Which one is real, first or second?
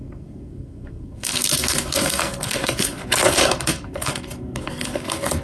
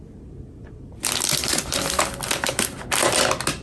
second